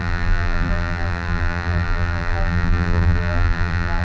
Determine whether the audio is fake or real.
fake